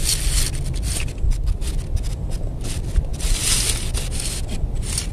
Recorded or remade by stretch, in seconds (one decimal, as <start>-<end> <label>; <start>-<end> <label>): 0.0-5.1 recorded